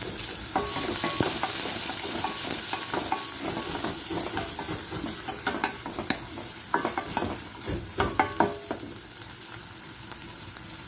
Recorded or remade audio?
recorded